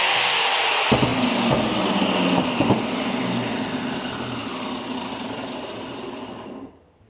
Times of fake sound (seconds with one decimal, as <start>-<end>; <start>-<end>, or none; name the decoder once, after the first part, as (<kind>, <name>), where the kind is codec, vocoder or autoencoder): none